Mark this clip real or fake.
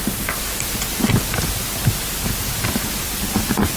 real